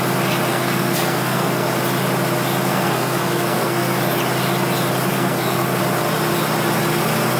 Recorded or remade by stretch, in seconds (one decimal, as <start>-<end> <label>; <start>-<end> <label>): 0.0-0.5 recorded; 0.5-1.7 remade; 1.7-2.7 recorded; 2.7-4.0 remade; 4.0-5.1 recorded; 5.1-5.8 remade; 5.8-7.4 recorded